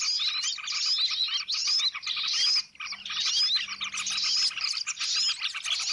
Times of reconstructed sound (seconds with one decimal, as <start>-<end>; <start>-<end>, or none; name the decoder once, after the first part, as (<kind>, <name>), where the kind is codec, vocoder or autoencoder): none